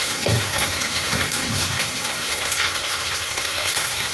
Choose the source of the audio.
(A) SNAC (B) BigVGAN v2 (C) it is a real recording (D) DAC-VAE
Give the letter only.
A